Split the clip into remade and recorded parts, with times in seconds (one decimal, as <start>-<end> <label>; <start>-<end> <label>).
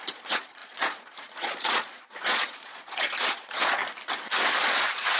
0.0-3.8 remade; 3.8-4.6 recorded; 4.6-5.2 remade